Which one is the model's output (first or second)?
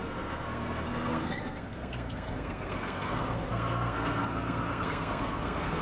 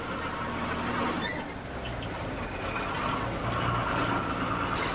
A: first